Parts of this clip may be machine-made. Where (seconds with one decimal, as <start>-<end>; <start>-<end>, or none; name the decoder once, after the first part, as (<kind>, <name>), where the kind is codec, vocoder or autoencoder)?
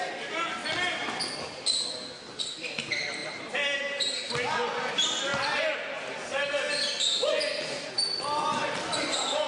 none